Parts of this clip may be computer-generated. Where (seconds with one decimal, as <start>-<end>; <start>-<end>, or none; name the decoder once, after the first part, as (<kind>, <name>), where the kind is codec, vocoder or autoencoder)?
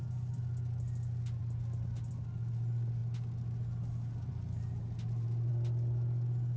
none